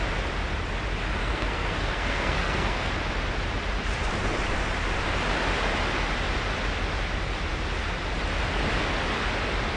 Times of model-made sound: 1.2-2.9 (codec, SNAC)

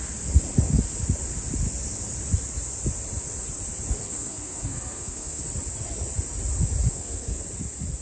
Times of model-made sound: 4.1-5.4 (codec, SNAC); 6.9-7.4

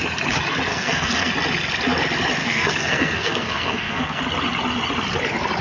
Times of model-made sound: 0.7-1.3 (codec, SNAC); 2.4-4.2

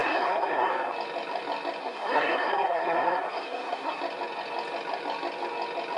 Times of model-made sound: 0.0-0.7 (codec, SNAC); 1.8-4.0

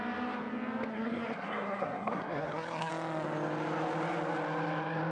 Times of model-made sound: 0.9-2.9 (codec, SNAC)